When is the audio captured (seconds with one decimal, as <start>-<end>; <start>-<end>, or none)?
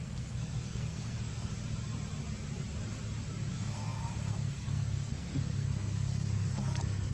1.5-3.5